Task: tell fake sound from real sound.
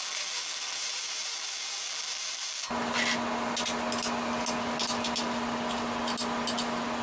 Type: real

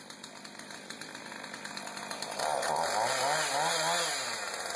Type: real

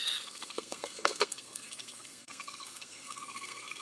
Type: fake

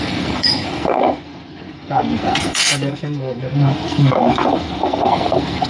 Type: fake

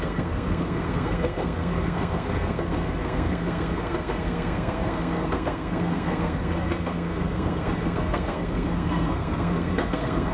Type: fake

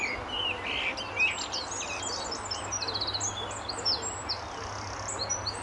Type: real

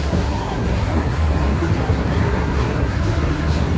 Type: fake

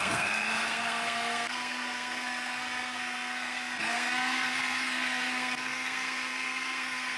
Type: fake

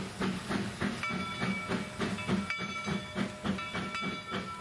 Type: real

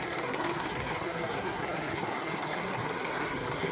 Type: fake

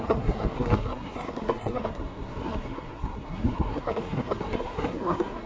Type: fake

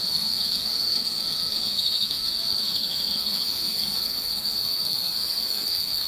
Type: fake